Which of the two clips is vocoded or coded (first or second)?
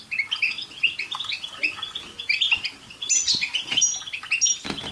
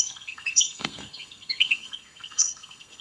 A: second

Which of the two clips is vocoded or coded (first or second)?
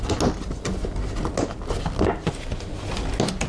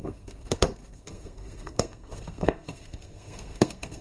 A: second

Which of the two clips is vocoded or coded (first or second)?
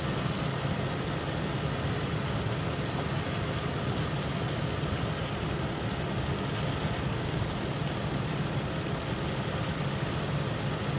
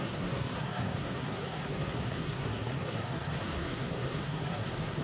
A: second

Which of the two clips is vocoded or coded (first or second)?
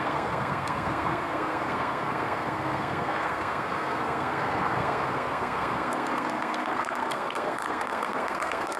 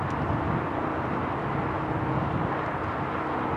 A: first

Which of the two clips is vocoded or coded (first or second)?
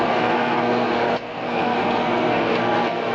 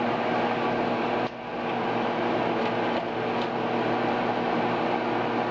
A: first